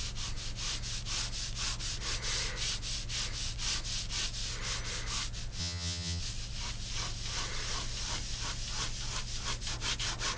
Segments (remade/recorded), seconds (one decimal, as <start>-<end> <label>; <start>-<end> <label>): 0.0-5.6 recorded; 5.6-6.2 remade; 6.2-10.4 recorded